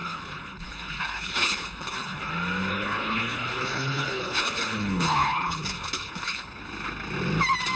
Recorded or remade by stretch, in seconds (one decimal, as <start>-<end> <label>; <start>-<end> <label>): 0.0-2.3 remade; 2.3-2.7 recorded; 2.7-6.6 remade; 6.6-7.8 recorded